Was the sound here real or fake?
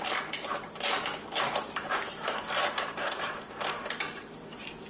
fake